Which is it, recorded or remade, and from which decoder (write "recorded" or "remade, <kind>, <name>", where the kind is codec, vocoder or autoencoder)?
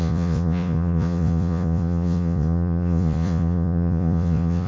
remade, vocoder, Vocos